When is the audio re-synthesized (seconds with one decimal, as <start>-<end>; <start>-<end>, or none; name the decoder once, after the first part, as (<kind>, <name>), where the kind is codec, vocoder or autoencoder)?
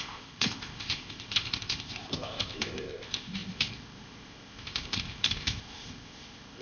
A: 0.0-6.6 (codec, ZipCodec)